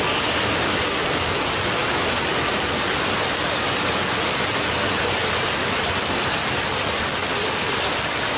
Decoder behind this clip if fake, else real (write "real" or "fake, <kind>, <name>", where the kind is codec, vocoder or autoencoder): real